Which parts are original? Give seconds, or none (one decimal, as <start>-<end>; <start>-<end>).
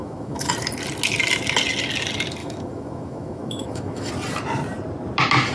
0.5-2.4; 4.1-5.5